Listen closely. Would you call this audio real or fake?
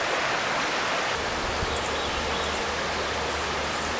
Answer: real